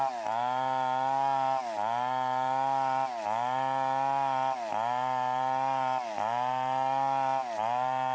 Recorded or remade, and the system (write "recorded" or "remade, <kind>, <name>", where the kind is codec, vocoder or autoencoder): recorded